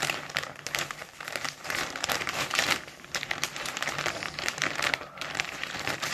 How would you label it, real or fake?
fake